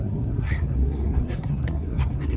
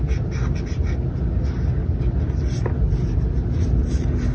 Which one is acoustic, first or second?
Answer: second